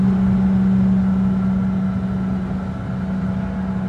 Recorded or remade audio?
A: recorded